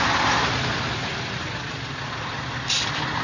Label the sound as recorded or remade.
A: recorded